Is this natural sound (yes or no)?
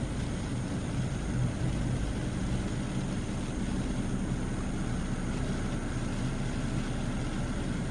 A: yes